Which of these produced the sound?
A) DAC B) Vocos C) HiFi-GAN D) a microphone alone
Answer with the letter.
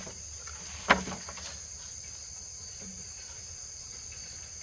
D